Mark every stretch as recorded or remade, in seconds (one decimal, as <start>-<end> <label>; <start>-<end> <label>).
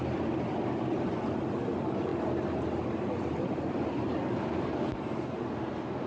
0.0-6.1 recorded